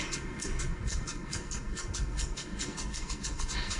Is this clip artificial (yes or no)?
yes